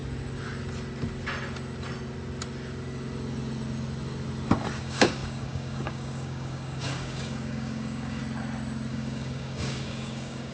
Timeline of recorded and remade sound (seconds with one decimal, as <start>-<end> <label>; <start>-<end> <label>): 0.0-4.8 recorded; 4.8-8.2 remade; 8.2-8.9 recorded; 8.9-10.5 remade